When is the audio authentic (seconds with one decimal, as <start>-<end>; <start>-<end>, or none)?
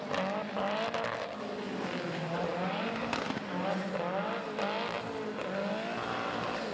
0.0-6.7